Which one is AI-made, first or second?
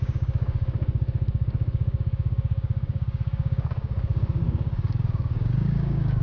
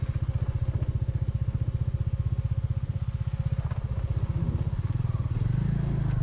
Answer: first